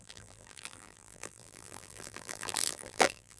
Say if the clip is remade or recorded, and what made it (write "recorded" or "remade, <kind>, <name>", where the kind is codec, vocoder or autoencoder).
remade, vocoder, BigVGAN v2